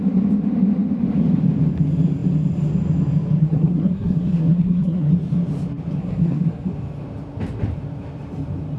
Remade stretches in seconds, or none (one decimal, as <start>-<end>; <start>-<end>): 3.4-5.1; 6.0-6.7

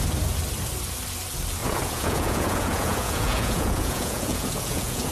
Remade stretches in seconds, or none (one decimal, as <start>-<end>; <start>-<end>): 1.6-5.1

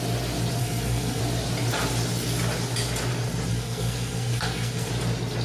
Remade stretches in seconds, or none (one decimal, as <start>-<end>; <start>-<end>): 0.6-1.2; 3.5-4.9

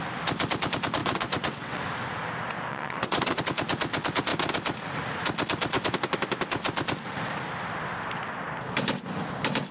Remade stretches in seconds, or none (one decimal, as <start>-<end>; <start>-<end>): 1.0-1.8; 2.7-3.4

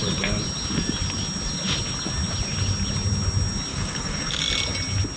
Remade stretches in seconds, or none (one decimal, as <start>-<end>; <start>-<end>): 3.7-4.4

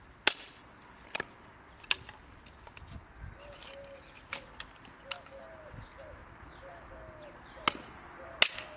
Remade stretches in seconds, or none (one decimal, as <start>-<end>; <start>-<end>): none